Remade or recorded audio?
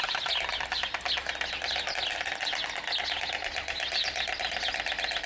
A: recorded